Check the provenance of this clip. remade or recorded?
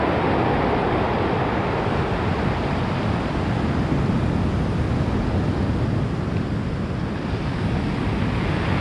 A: recorded